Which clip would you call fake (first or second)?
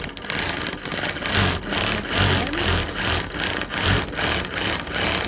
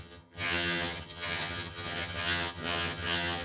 second